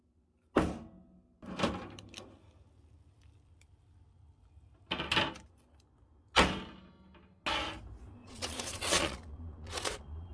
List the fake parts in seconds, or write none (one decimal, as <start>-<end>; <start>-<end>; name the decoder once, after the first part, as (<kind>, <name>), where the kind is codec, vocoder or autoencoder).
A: 8.2-10.3 (vocoder, Vocos)